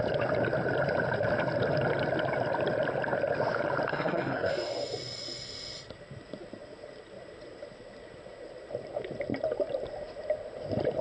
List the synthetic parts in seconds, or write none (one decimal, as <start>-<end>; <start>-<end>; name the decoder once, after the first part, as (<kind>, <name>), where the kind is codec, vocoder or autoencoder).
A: 3.9-4.5 (codec, SNAC)